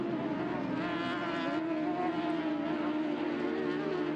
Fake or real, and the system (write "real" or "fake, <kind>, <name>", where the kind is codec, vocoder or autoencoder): real